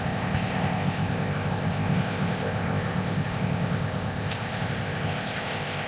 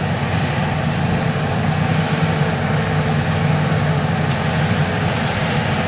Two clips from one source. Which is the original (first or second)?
second